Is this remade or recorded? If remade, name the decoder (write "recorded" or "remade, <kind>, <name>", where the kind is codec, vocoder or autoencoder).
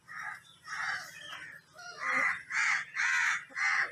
recorded